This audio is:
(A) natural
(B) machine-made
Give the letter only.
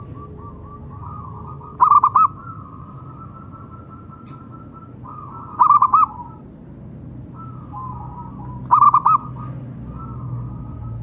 A